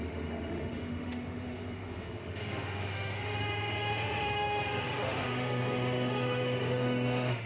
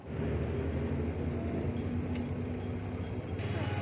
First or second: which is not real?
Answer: first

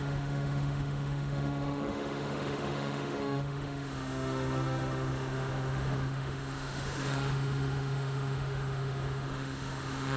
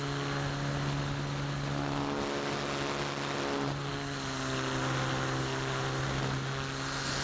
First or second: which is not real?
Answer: first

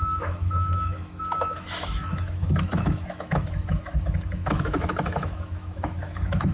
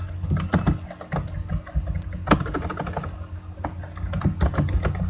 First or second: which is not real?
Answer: first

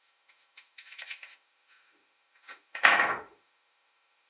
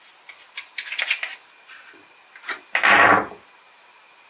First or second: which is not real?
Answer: first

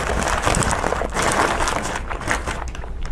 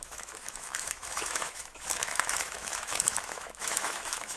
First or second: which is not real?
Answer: second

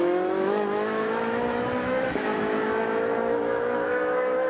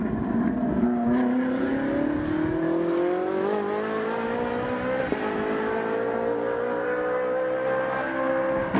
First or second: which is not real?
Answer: first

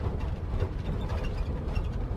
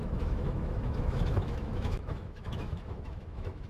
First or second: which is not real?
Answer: second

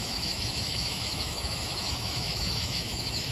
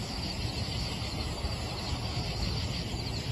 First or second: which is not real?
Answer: first